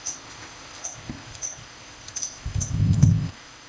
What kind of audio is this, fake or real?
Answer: fake